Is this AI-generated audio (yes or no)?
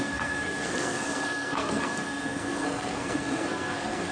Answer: yes